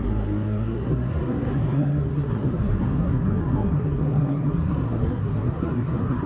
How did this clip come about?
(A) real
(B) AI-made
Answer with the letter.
B